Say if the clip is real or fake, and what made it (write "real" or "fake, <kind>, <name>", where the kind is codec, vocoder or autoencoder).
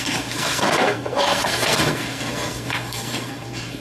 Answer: fake, codec, SNAC